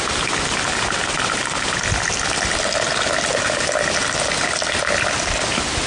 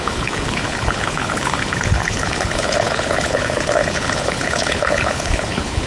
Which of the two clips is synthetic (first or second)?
second